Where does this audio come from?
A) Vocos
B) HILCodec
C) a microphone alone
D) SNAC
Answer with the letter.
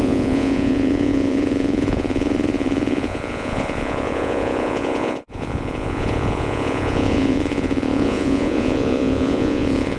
A